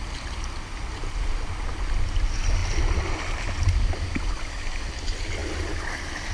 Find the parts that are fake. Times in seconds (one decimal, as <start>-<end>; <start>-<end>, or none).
none